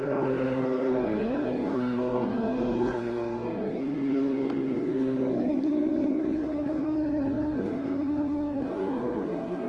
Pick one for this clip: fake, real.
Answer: fake